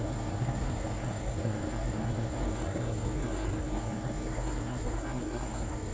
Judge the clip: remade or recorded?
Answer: remade